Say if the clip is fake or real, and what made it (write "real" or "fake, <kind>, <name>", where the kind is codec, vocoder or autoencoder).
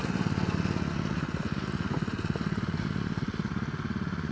real